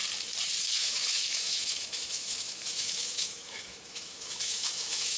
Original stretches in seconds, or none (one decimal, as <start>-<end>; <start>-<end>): 0.0-0.6